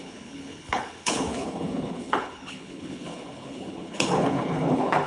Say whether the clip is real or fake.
fake